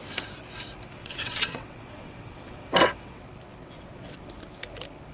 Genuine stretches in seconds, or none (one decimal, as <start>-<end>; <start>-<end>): 0.0-1.0; 3.2-3.6; 4.2-5.1